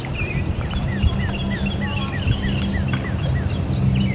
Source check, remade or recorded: remade